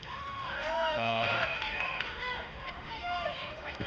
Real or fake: fake